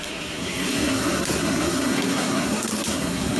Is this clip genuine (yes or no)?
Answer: no